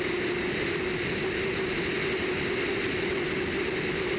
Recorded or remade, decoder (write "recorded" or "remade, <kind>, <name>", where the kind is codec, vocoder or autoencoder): recorded